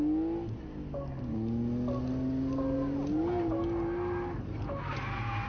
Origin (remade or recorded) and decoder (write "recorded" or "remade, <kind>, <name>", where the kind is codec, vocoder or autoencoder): recorded